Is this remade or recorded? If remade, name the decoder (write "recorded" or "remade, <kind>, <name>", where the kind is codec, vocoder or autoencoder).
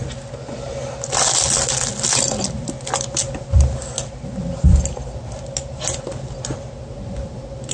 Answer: recorded